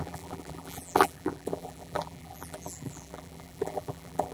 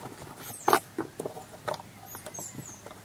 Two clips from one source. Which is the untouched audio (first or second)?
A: second